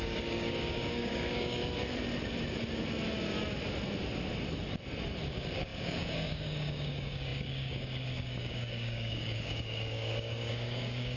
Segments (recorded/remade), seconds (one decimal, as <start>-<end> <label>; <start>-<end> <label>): 0.0-1.6 remade; 1.6-5.3 recorded; 5.3-11.2 remade